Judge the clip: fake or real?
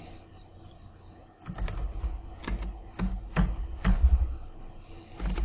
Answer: real